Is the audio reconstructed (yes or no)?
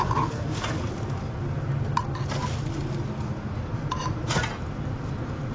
no